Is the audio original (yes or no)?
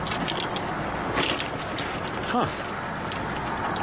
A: yes